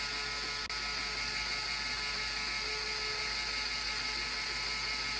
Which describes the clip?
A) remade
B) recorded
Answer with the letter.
B